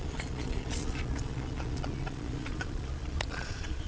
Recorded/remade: remade